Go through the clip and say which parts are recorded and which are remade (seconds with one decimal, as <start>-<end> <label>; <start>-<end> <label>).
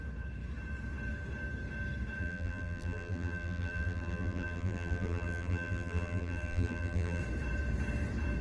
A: 0.0-2.2 recorded; 2.2-7.2 remade; 7.2-8.4 recorded